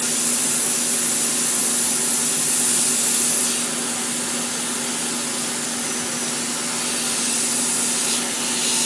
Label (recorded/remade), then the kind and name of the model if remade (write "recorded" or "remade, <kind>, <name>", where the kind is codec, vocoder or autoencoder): recorded